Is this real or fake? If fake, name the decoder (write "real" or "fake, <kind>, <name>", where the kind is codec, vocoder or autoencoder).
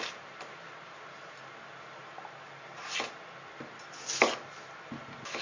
real